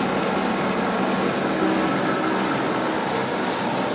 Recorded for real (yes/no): yes